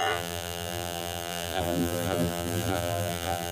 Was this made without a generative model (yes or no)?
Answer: no